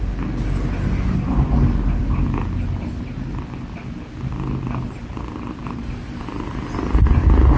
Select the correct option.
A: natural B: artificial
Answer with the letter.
A